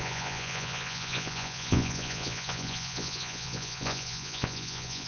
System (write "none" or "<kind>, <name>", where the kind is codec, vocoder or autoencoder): vocoder, Vocos